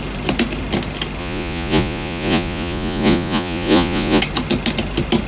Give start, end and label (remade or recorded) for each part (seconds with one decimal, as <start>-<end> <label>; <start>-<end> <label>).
0.0-1.2 recorded; 1.2-4.2 remade; 4.2-5.3 recorded